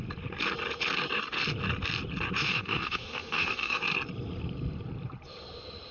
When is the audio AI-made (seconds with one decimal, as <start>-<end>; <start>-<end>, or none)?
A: 2.4-3.8